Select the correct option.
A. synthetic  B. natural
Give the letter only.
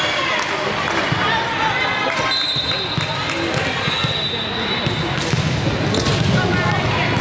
B